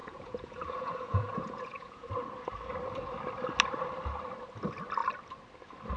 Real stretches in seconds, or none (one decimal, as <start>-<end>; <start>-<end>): 2.1-6.0